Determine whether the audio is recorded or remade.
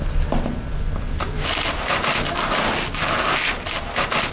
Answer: recorded